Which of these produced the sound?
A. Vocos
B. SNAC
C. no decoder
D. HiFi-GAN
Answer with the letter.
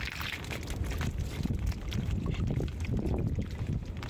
C